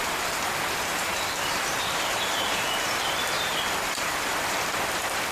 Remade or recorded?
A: remade